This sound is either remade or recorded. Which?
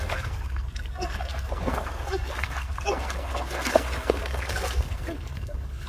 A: remade